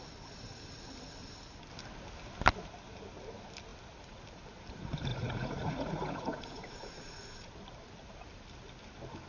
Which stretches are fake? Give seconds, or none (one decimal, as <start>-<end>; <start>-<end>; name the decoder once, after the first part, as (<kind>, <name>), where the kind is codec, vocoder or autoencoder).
5.1-7.5 (vocoder, Vocos)